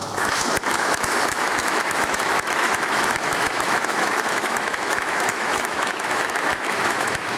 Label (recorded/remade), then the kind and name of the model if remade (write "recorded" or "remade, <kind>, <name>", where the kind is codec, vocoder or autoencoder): remade, autoencoder, DAC-VAE